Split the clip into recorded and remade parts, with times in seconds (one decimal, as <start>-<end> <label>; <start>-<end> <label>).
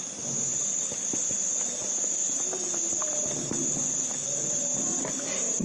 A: 0.0-5.6 recorded